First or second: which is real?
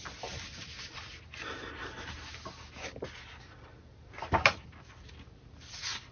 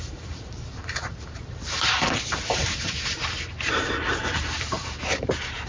first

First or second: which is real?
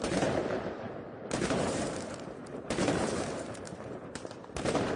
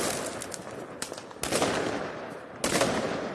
second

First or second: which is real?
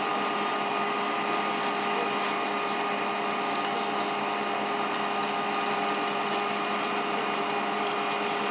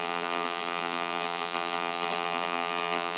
first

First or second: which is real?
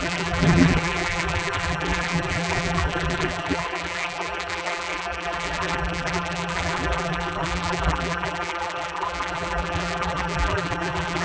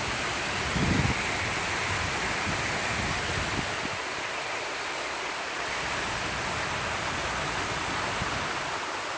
second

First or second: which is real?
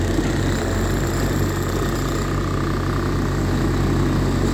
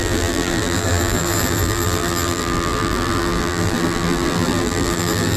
first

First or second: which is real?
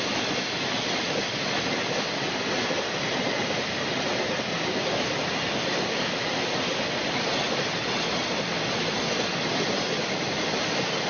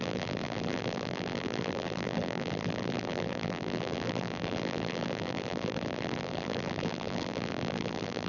first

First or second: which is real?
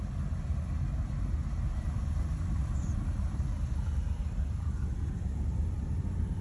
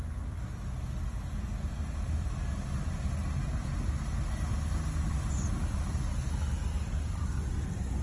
second